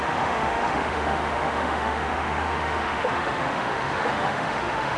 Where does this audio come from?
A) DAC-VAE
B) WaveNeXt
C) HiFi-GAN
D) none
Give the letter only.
A